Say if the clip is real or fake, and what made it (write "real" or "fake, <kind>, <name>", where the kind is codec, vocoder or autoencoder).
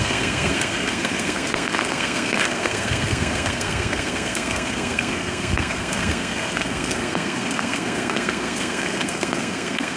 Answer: fake, codec, SNAC